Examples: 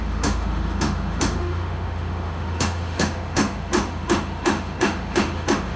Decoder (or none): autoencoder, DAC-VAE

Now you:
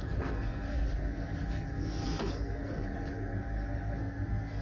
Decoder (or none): codec, SNAC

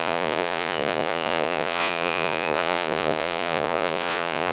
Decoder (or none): vocoder, Vocos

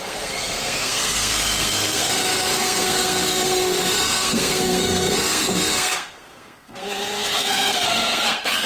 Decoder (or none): codec, SNAC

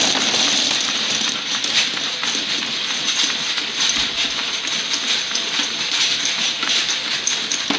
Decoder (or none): none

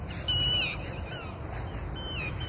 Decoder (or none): none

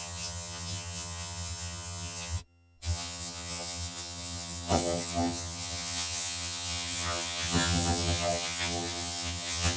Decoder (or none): vocoder, HiFi-GAN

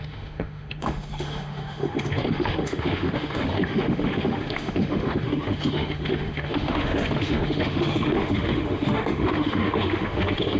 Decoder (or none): autoencoder, DAC-VAE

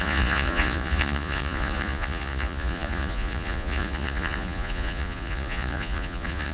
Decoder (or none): vocoder, Vocos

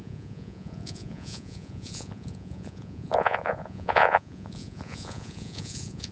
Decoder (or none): vocoder, Vocos